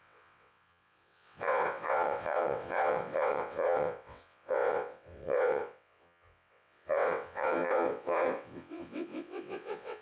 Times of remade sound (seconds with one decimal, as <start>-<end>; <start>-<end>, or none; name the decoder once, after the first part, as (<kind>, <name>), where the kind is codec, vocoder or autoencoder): 0.0-10.0 (vocoder, WaveNeXt)